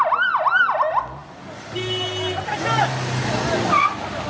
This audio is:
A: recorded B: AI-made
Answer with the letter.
A